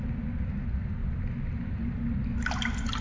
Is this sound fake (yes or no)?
no